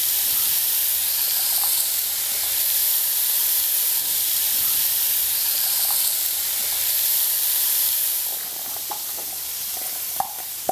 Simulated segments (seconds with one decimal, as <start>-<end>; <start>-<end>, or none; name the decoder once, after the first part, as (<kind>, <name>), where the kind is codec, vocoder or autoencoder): 0.0-1.0 (vocoder, BigVGAN v2); 2.3-2.8; 3.6-10.7